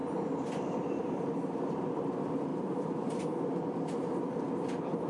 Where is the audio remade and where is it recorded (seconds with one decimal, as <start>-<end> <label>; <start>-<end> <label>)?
0.0-2.5 recorded; 2.5-3.2 remade; 3.2-5.1 recorded